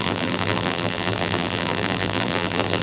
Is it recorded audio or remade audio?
remade